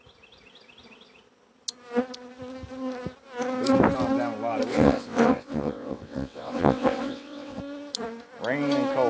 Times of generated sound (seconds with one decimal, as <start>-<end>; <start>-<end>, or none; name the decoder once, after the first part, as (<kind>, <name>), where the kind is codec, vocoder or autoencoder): 4.7-7.6 (vocoder, WaveNeXt)